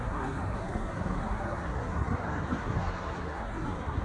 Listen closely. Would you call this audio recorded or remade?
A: remade